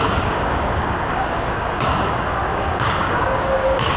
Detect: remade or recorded remade